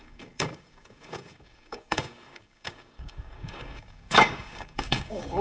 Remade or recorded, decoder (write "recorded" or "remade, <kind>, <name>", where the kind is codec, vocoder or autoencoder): remade, codec, DAC